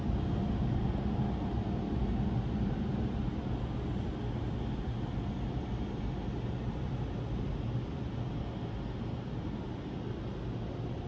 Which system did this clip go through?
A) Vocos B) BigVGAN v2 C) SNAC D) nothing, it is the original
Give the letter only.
D